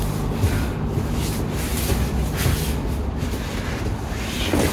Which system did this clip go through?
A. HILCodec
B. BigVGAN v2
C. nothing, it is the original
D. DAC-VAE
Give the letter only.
C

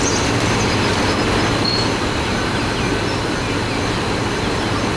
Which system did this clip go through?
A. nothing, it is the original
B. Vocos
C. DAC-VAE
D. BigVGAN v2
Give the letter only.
A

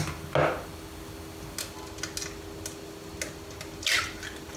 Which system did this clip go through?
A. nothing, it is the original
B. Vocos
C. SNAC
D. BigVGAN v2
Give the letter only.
A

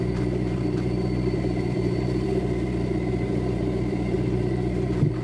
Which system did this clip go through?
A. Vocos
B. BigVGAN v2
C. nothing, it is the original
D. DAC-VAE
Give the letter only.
B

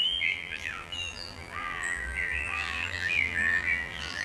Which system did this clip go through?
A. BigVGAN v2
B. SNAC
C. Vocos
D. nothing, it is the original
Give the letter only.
A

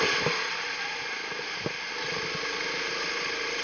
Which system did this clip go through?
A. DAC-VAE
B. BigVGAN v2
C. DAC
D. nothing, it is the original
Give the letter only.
D